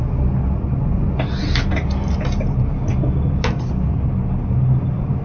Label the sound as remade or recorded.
recorded